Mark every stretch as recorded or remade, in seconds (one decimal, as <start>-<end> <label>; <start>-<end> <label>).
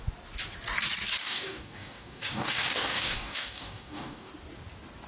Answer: 0.0-1.2 recorded; 1.2-4.3 remade; 4.3-5.1 recorded